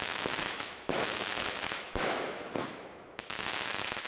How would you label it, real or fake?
fake